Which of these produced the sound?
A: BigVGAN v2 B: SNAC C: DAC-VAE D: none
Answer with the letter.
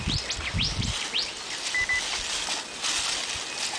D